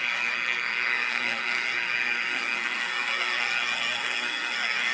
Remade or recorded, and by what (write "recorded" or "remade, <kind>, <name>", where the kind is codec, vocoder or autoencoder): remade, codec, SNAC